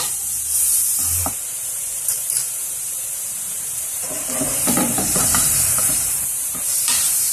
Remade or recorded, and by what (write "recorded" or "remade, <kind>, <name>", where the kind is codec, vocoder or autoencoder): remade, vocoder, BigVGAN v2